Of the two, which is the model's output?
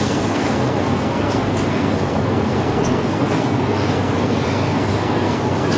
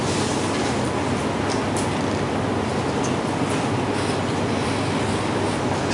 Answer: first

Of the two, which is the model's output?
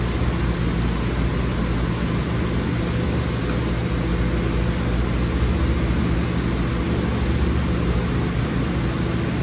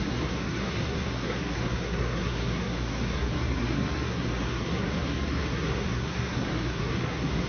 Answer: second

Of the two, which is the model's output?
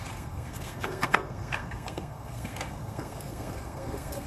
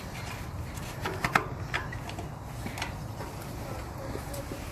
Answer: first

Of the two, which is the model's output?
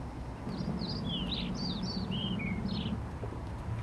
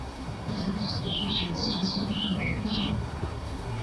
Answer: second